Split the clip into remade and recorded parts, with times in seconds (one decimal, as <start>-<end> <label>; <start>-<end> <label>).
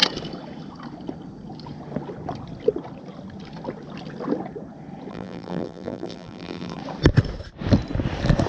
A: 0.0-5.1 recorded; 5.1-6.8 remade; 6.8-8.5 recorded